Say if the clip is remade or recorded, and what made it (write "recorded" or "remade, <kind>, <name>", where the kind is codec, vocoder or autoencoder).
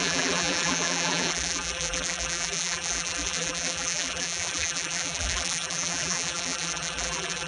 remade, vocoder, BigVGAN v2